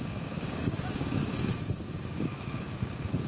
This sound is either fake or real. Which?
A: fake